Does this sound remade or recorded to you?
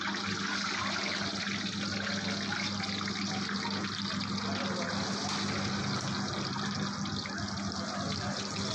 recorded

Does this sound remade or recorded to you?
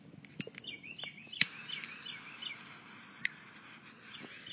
recorded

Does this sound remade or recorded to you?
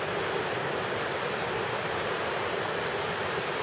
remade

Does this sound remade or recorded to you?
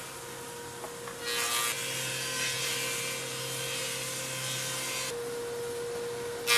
recorded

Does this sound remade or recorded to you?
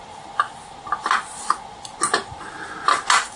recorded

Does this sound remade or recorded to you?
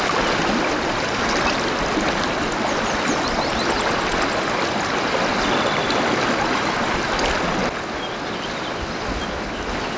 recorded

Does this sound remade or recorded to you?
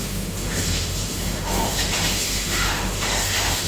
remade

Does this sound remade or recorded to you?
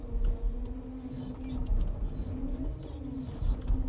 recorded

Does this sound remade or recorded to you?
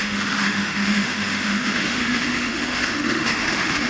remade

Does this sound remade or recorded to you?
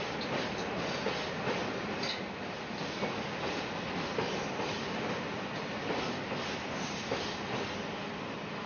recorded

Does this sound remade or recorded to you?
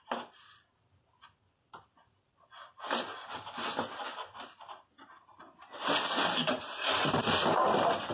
recorded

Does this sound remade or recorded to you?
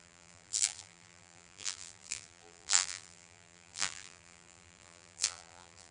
remade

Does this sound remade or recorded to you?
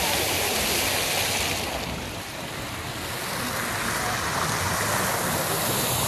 recorded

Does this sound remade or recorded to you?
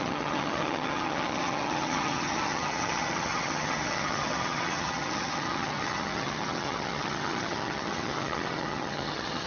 remade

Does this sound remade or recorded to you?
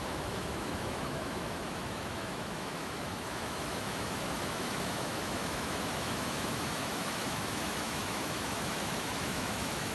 remade